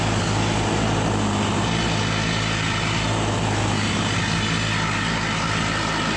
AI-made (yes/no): no